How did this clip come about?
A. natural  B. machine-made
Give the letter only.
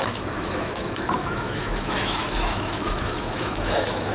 B